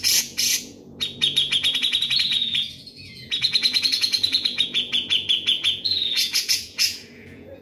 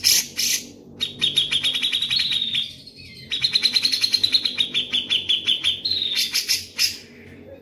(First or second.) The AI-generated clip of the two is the first